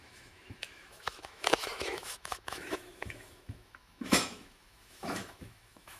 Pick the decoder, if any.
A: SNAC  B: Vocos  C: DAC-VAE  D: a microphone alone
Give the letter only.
C